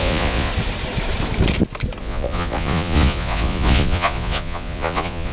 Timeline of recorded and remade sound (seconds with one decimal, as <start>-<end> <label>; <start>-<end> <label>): 0.0-0.5 remade; 0.5-2.0 recorded; 2.0-5.3 remade